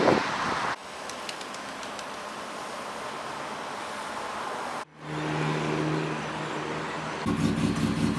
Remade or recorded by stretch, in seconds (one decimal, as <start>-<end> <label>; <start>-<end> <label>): 0.0-8.2 recorded

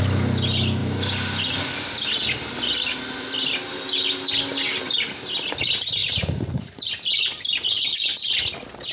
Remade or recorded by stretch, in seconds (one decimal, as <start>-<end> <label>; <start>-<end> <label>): 0.0-6.0 recorded; 6.0-6.9 remade; 6.9-8.9 recorded

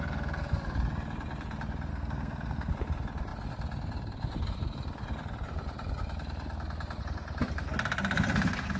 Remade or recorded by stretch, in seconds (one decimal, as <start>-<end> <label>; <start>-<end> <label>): 0.0-1.9 recorded; 1.9-2.7 remade; 2.7-8.8 recorded

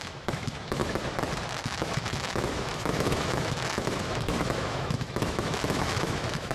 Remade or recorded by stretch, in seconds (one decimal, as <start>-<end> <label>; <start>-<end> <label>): 0.0-0.8 remade; 0.8-1.6 recorded; 1.6-6.5 remade

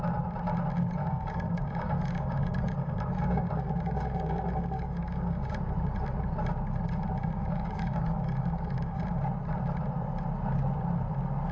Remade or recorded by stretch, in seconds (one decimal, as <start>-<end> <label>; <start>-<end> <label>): 0.0-1.0 recorded; 1.0-5.5 remade; 5.5-7.2 recorded; 7.2-9.0 remade; 9.0-11.5 recorded

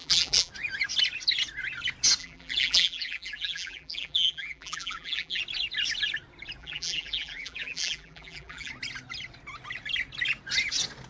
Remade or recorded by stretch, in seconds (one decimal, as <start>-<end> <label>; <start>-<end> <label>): 0.0-0.5 remade; 0.5-2.2 recorded; 2.2-5.4 remade; 5.4-6.6 recorded; 6.6-8.7 remade; 8.7-11.1 recorded

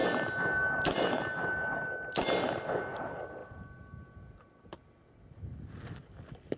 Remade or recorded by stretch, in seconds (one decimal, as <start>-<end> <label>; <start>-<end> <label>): 0.0-6.6 recorded

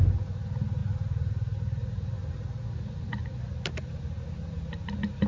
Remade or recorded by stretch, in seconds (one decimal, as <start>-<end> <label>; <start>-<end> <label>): 0.0-0.8 recorded; 0.8-2.3 remade; 2.3-3.2 recorded; 3.2-3.8 remade; 3.8-5.3 recorded